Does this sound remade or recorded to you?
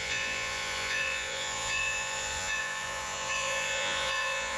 remade